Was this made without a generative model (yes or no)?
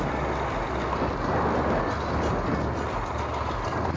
yes